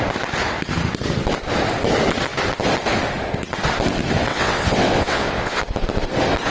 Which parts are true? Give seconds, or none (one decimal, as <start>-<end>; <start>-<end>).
0.0-4.3; 5.6-6.5